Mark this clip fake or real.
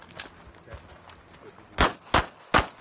real